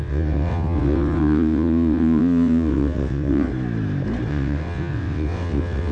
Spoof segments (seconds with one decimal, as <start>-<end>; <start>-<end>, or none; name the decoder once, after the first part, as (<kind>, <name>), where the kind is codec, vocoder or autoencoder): 0.0-3.5 (vocoder, WaveNeXt); 4.3-5.9